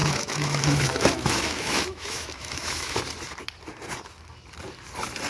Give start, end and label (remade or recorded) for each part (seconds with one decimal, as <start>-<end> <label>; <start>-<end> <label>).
0.0-3.0 remade; 3.0-5.3 recorded